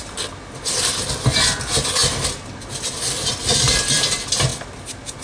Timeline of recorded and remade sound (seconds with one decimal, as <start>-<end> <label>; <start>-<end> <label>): 0.0-5.2 recorded